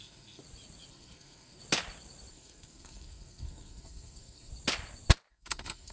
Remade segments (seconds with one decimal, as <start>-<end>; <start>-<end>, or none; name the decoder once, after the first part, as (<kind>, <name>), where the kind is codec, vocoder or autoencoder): 0.0-0.4 (codec, SNAC); 0.9-1.6; 2.3-4.5; 5.3-5.9